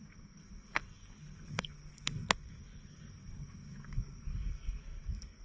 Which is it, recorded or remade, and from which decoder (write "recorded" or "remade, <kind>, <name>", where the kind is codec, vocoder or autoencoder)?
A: remade, codec, SNAC